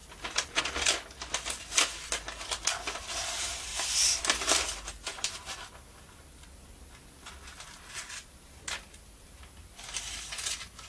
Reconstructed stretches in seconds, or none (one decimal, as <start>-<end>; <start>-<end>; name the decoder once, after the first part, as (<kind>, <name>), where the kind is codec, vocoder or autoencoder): none